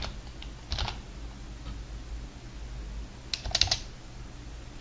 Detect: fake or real real